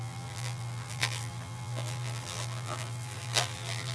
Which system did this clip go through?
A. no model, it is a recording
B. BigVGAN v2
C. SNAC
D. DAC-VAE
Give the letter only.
B